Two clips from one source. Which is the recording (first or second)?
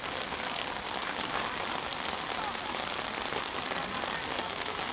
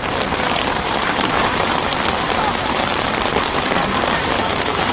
first